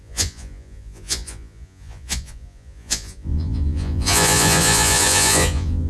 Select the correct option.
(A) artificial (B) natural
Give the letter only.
A